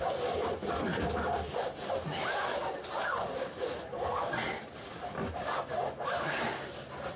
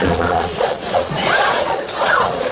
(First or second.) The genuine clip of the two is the first